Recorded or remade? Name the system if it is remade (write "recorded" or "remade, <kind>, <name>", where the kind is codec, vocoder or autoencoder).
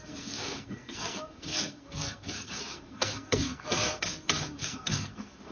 remade, codec, SNAC